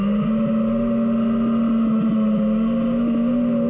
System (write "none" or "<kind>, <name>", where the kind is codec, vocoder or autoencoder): none